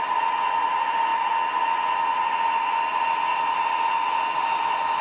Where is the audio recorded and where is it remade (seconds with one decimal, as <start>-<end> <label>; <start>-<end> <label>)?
0.0-5.0 recorded